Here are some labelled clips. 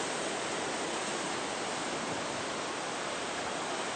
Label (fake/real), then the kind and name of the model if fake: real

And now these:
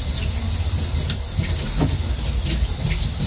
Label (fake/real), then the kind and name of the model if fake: real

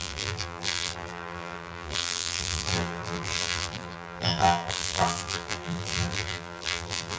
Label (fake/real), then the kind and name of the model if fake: fake, vocoder, BigVGAN v2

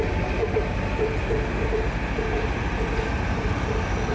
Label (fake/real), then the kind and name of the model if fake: real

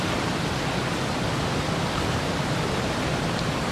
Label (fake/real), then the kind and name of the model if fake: real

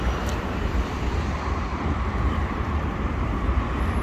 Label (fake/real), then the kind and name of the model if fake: fake, vocoder, BigVGAN v2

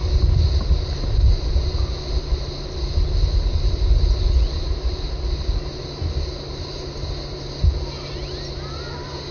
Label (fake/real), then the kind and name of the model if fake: real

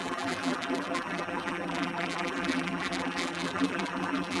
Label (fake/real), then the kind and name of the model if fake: fake, vocoder, BigVGAN v2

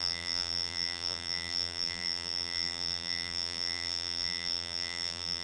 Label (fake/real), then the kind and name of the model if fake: fake, vocoder, BigVGAN v2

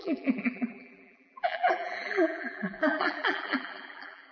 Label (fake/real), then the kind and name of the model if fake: fake, vocoder, BigVGAN v2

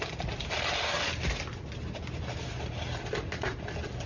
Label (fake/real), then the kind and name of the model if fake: real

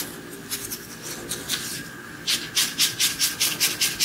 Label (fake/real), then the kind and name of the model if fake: real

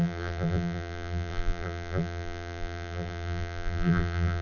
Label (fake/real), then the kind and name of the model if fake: fake, vocoder, BigVGAN v2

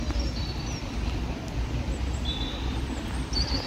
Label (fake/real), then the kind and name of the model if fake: real